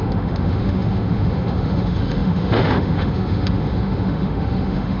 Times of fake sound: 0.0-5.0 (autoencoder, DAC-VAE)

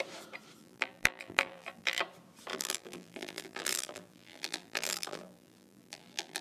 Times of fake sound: 0.6-2.0 (vocoder, BigVGAN v2); 2.5-6.4

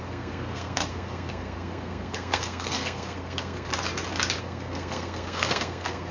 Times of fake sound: 0.0-3.7 (codec, SNAC); 4.4-6.1

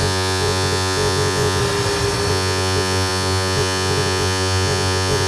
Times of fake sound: 0.0-1.6 (vocoder, Vocos); 2.3-5.3